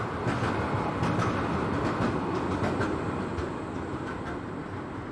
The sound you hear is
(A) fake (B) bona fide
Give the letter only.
B